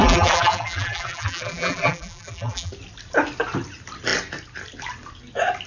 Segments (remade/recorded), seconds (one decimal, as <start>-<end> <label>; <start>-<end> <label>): 0.0-2.7 remade; 2.7-5.7 recorded